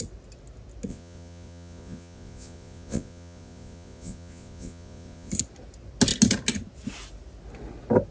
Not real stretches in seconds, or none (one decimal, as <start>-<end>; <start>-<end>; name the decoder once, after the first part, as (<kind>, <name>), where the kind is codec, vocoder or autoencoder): 0.9-5.3 (vocoder, Vocos)

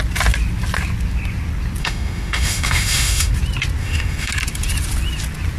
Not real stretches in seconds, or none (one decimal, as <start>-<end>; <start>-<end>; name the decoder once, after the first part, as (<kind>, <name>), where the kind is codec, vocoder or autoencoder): 1.8-3.3 (autoencoder, DAC-VAE); 3.8-4.3

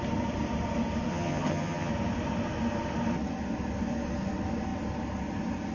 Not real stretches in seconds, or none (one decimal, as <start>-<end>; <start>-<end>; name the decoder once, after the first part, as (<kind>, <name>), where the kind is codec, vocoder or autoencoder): 1.1-1.9 (vocoder, HiFi-GAN)

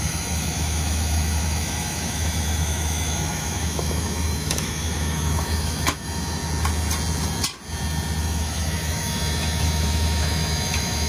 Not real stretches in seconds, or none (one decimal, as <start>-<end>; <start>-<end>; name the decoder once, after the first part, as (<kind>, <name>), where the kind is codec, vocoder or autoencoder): 0.0-6.4 (autoencoder, DAC-VAE); 8.2-11.1

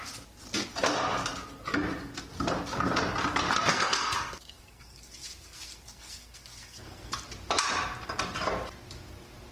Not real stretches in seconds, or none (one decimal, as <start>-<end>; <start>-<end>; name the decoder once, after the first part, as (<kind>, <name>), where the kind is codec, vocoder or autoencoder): 3.7-7.1 (codec, SNAC)

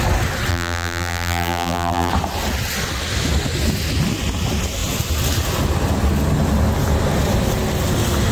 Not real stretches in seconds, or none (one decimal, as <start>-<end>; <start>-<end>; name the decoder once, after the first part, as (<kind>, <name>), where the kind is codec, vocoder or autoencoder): 0.5-2.1 (vocoder, BigVGAN v2)